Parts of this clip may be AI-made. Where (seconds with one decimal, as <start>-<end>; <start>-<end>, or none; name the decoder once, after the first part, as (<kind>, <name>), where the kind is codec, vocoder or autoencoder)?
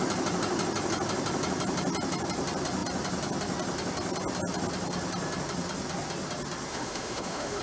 6.7-7.6 (autoencoder, DAC-VAE)